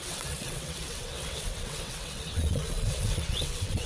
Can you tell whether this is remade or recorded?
remade